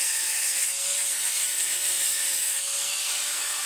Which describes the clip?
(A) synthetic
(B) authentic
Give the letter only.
A